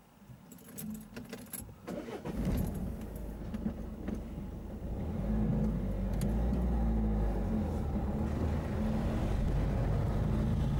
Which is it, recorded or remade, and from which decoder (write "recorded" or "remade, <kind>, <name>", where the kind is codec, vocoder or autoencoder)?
recorded